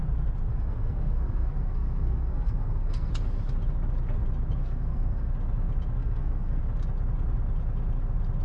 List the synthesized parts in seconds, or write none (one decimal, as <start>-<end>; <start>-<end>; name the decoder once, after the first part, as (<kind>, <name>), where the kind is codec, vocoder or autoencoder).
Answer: 0.5-3.1 (codec, SNAC); 4.6-5.3; 6.0-6.6